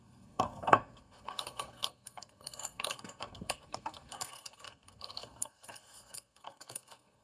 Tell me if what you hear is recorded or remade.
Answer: remade